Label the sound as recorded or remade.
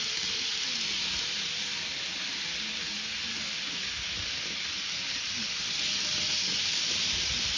recorded